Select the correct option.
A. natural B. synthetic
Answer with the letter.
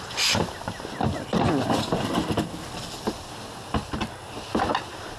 A